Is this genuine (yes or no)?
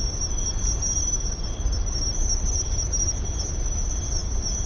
yes